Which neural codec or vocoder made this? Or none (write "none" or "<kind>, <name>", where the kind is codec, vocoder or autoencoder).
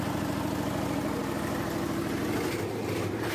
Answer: none